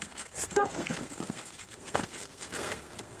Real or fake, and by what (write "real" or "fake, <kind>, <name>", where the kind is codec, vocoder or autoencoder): fake, codec, SNAC